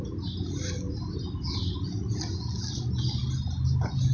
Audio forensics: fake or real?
real